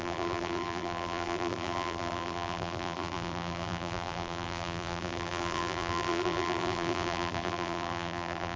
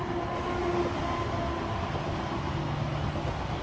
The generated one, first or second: first